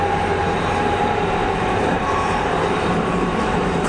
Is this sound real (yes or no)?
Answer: no